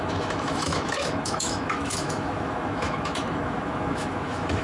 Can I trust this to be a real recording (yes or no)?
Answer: no